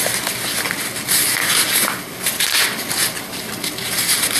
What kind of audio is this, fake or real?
real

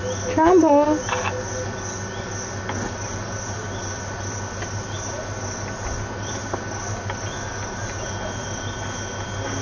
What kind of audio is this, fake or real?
real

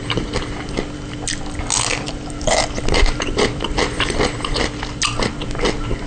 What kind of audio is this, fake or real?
real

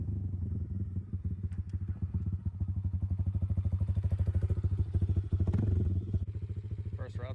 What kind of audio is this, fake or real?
real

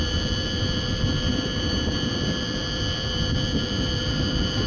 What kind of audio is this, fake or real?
fake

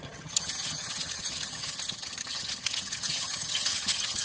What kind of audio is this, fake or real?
fake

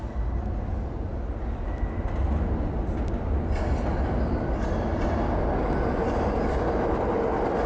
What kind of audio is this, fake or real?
real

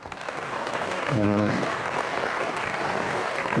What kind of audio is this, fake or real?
fake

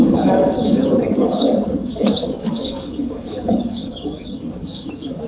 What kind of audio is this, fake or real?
fake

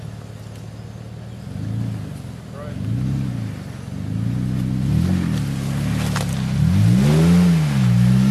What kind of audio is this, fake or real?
real